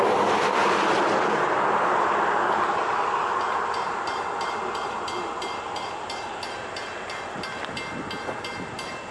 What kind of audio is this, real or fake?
real